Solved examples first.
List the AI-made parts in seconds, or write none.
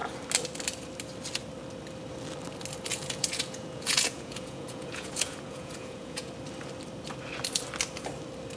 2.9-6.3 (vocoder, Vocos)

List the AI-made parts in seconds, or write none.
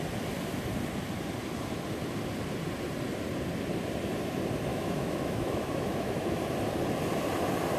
4.7-6.4 (autoencoder, DAC-VAE)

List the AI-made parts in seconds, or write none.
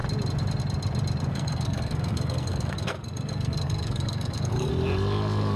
1.3-4.7 (codec, SNAC)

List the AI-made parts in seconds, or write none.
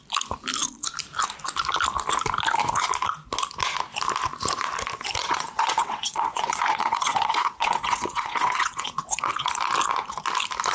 5.2-9.5 (vocoder, WaveNeXt)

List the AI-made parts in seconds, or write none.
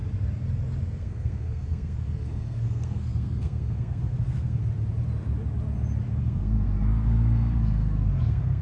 0.8-4.6 (codec, SNAC); 6.2-8.6